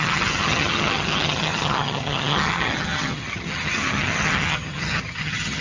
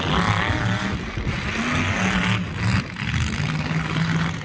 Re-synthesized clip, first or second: first